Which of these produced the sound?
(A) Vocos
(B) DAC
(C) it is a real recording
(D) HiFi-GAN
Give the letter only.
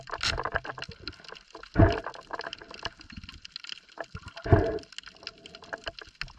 C